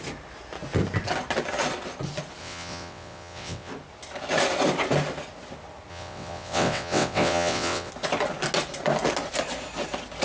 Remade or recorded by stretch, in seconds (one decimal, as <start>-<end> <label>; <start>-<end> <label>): 0.0-2.4 recorded; 2.4-3.7 remade; 3.7-5.9 recorded; 5.9-7.9 remade; 7.9-10.2 recorded